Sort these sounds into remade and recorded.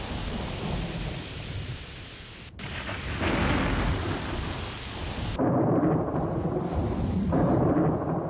recorded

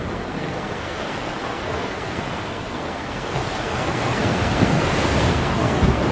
remade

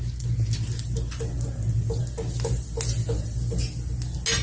recorded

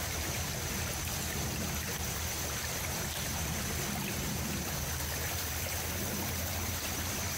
recorded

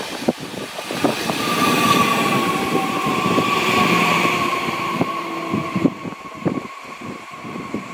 remade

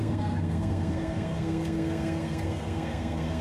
remade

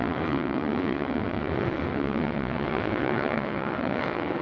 remade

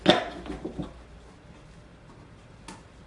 recorded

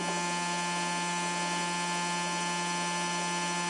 recorded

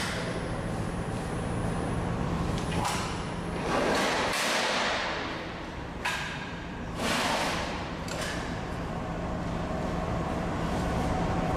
remade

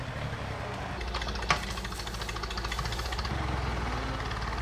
recorded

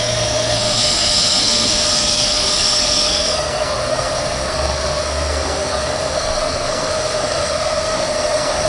remade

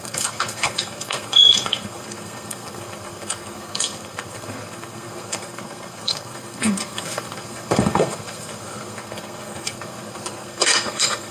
remade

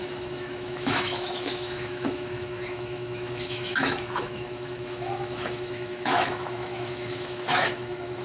remade